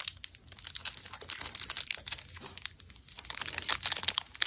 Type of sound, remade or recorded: recorded